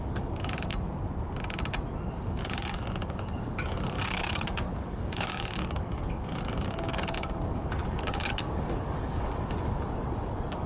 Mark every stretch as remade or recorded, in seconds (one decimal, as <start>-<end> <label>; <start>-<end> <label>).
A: 0.0-0.7 remade; 0.7-2.1 recorded; 2.1-10.7 remade